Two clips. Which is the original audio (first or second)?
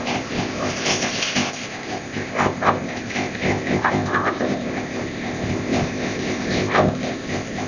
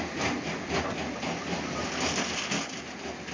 second